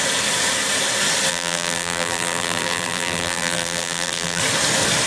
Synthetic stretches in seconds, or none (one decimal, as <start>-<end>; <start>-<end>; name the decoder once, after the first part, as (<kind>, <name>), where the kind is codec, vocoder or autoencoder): 1.3-4.4 (vocoder, BigVGAN v2)